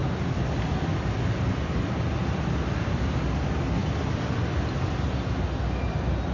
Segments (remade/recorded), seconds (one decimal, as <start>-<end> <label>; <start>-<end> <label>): 0.0-3.4 remade; 3.4-3.8 recorded; 3.8-5.3 remade; 5.3-6.3 recorded